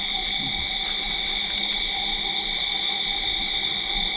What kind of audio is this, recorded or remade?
recorded